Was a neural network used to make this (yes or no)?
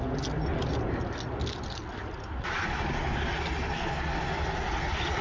no